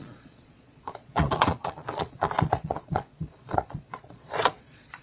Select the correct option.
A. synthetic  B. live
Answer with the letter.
A